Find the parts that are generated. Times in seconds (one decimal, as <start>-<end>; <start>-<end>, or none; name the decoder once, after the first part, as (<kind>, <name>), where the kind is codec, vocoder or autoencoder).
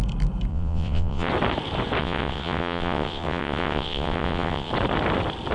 0.5-1.3 (vocoder, WaveNeXt); 2.0-4.7